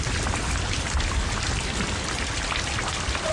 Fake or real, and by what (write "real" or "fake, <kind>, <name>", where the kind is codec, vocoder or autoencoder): real